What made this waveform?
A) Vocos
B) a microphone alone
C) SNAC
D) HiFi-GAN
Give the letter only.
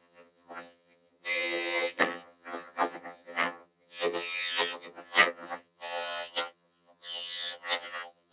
D